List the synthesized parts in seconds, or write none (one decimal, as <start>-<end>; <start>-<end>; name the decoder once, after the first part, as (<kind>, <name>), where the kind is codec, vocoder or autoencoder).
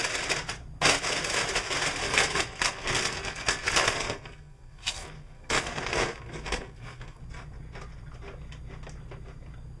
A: 2.0-7.2 (codec, SNAC)